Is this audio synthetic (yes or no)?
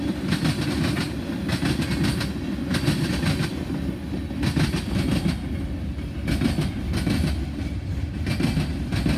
no